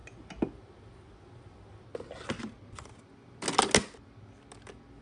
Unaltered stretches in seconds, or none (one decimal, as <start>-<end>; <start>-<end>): 0.0-5.0

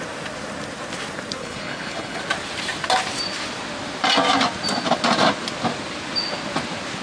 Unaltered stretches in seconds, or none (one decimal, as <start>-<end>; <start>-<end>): 0.0-1.4; 2.2-7.0

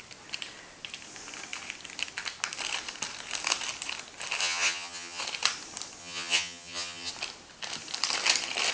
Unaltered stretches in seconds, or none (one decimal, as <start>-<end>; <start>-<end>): 0.0-4.4; 5.2-6.0; 7.1-8.7

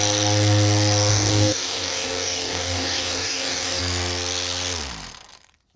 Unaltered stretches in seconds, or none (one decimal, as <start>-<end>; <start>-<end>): 0.0-1.1; 3.8-5.8

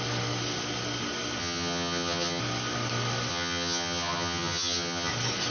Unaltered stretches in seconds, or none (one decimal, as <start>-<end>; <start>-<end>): 0.0-1.4; 2.4-3.3; 5.1-5.5